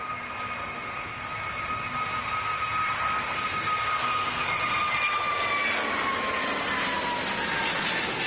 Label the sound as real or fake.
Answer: real